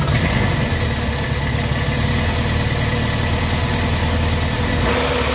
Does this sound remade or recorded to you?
recorded